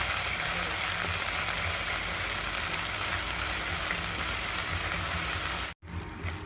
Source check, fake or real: real